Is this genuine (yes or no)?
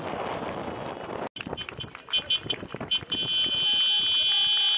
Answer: yes